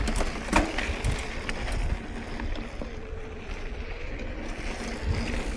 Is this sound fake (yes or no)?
no